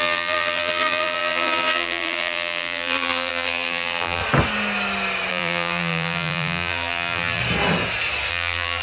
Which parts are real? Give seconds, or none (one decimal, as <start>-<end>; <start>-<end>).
4.2-5.3; 7.4-8.3

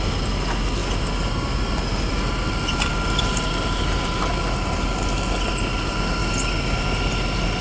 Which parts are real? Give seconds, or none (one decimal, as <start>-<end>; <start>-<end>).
0.0-7.6

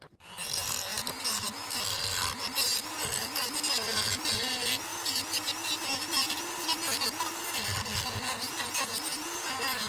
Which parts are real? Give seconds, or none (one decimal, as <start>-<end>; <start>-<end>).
0.0-9.9

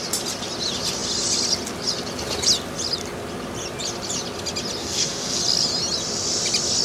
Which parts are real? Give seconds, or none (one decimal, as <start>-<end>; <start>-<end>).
0.0-4.8; 5.4-6.8

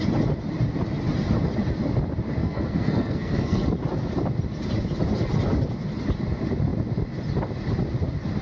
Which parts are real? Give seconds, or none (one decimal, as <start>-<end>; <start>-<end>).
0.0-2.4; 3.7-8.4